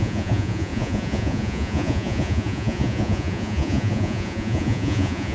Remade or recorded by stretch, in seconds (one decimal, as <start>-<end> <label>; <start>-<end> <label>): 0.0-5.3 remade